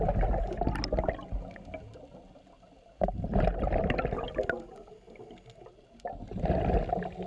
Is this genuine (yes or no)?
yes